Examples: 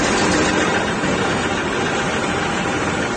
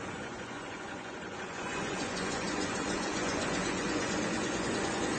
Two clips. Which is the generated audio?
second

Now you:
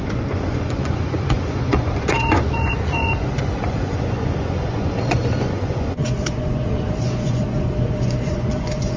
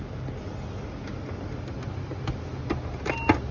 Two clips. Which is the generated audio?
first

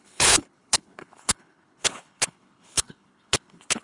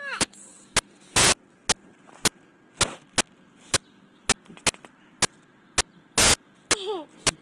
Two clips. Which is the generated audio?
first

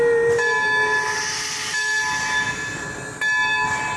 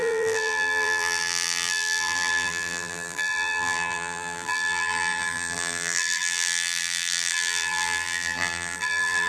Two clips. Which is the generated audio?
second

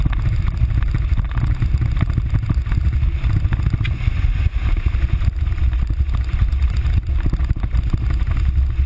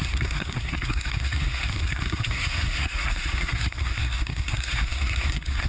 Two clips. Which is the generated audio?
second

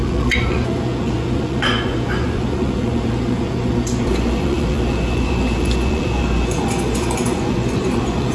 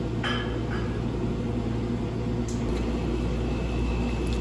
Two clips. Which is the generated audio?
first